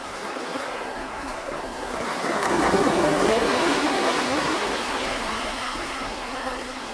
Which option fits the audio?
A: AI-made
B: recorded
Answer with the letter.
A